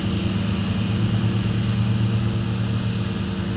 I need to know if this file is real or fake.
real